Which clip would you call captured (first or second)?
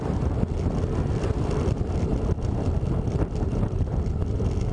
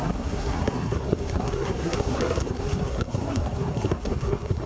first